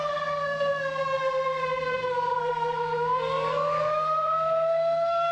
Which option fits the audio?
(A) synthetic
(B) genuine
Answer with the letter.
A